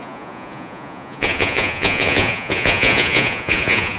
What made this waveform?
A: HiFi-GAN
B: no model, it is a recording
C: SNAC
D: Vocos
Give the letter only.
D